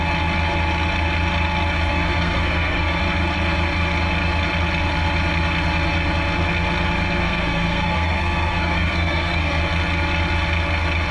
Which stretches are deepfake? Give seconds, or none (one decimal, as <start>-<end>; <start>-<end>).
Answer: 1.9-3.0; 7.2-9.6